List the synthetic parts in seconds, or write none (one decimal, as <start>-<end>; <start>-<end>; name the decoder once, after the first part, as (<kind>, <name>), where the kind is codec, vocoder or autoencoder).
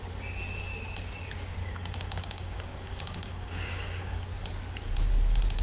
1.6-4.2 (codec, DAC)